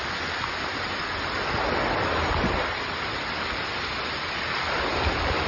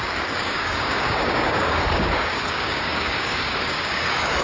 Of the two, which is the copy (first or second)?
second